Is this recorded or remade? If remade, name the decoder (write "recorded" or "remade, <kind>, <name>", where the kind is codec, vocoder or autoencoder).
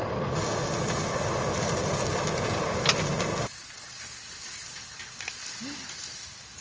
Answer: recorded